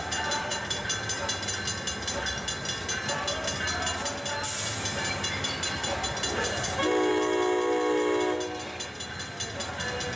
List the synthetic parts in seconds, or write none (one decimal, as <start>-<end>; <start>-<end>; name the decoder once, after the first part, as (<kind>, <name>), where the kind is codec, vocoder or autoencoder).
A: none